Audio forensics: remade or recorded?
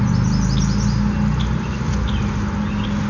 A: recorded